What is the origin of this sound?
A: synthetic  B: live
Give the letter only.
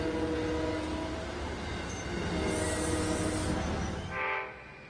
B